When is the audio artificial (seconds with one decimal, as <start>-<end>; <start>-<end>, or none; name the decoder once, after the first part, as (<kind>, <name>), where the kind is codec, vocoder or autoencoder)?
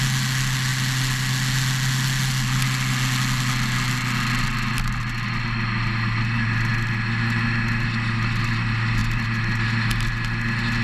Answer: none